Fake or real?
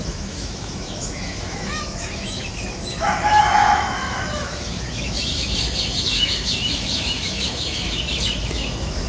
fake